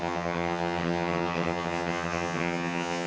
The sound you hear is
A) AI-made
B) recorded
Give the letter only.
A